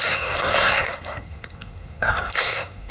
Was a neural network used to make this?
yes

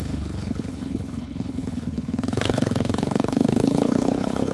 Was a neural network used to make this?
yes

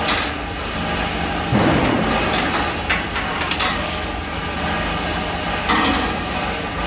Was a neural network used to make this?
no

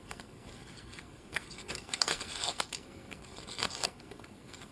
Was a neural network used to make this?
yes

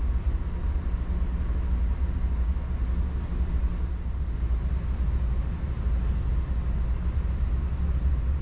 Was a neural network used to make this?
no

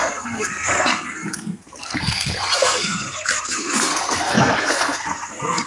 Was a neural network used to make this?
yes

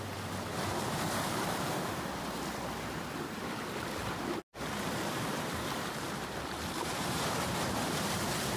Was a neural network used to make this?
yes